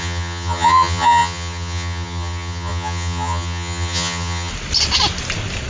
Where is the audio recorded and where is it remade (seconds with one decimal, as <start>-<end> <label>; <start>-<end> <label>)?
0.0-4.5 remade; 4.5-5.7 recorded